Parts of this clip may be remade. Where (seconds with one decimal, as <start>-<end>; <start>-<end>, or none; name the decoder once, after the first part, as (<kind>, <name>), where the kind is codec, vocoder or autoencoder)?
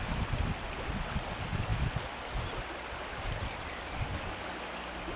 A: none